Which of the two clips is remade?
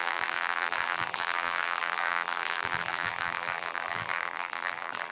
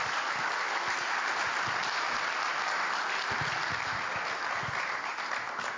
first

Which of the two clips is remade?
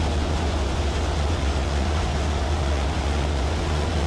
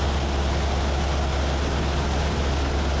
first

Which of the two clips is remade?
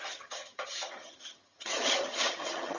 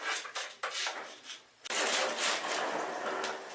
first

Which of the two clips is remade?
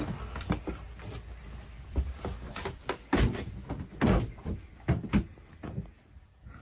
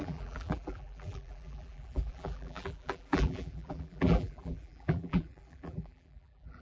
second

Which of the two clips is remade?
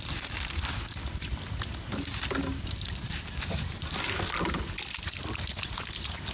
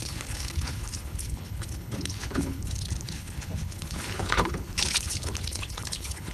second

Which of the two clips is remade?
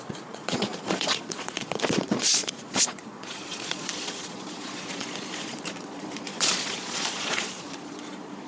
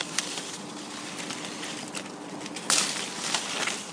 first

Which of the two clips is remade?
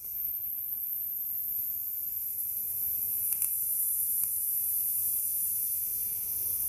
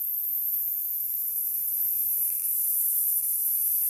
second